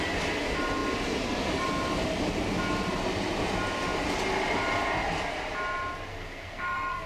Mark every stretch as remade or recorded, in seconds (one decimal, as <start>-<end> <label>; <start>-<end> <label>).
0.0-6.1 recorded; 6.1-7.1 remade